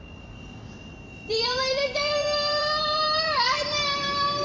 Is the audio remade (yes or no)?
yes